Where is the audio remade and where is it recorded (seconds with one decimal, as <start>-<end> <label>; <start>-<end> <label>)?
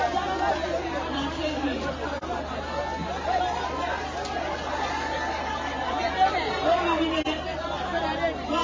0.0-8.6 recorded